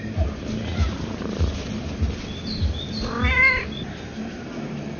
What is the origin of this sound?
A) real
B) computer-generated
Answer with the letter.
A